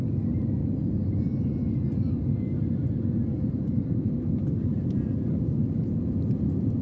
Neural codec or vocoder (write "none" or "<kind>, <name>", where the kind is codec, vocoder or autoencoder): none